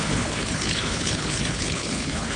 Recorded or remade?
remade